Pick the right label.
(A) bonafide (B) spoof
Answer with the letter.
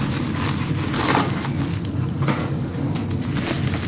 A